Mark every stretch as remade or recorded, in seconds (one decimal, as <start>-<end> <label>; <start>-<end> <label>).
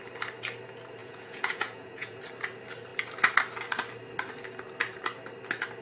0.0-1.0 recorded; 1.0-2.2 remade; 2.2-5.8 recorded